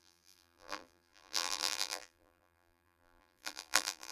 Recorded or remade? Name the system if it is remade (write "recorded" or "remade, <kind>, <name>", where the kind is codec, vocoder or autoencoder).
remade, vocoder, BigVGAN v2